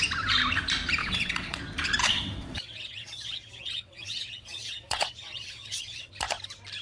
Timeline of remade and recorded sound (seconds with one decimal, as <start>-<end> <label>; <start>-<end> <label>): 0.0-1.0 recorded; 1.0-1.6 remade; 1.6-2.0 recorded; 2.0-6.1 remade; 6.1-6.8 recorded